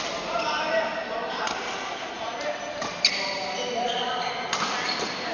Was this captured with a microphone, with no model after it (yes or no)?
yes